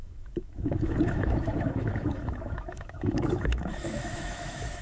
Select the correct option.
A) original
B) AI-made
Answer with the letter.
B